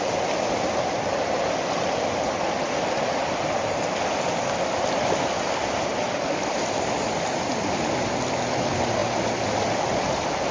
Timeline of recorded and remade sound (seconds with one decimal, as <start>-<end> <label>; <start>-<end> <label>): 0.0-10.5 recorded